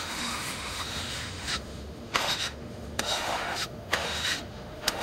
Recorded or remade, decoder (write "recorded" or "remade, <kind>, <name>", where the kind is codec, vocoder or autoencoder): remade, autoencoder, DAC-VAE